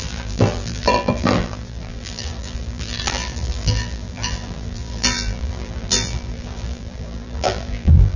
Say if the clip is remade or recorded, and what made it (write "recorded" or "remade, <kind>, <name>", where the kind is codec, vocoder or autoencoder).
remade, vocoder, BigVGAN v2